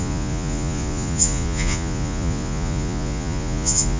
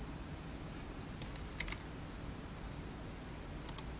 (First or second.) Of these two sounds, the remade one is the first